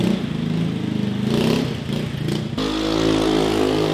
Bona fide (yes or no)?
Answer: yes